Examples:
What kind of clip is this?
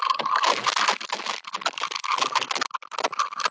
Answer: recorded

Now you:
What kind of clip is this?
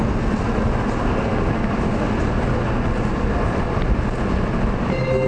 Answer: recorded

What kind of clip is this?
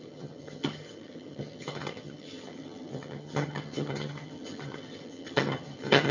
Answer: remade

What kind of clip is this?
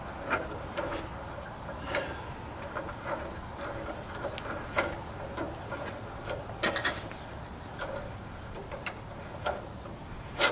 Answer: recorded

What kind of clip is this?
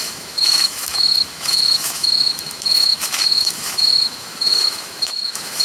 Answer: remade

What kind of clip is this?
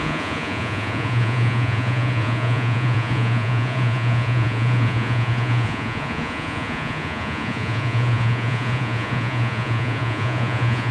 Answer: remade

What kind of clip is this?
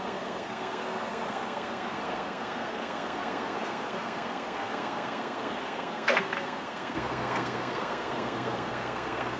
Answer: remade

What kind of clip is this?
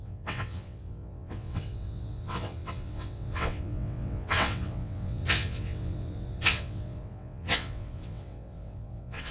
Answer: remade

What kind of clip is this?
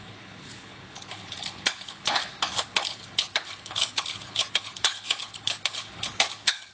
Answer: remade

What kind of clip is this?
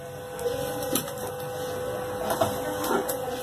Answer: recorded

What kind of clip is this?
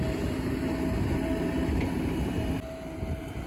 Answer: recorded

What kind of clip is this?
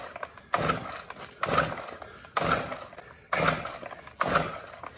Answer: recorded